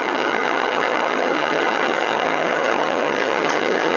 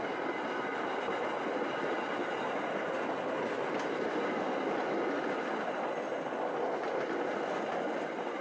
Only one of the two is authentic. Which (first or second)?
second